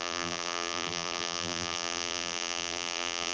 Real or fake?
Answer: fake